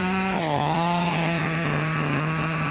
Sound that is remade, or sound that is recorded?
remade